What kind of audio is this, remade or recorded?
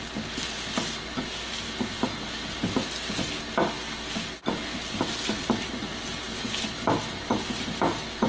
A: recorded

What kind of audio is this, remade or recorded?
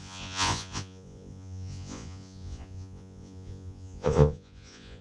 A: remade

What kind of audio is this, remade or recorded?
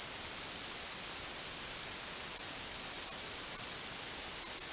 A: recorded